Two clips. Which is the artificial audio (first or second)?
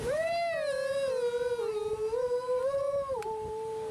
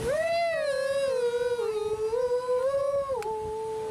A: first